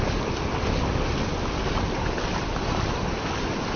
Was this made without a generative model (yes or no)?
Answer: yes